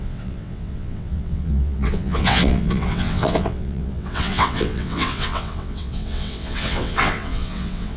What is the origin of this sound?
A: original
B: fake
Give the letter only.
B